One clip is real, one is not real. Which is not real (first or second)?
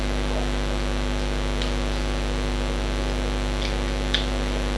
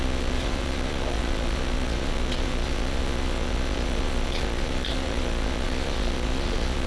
second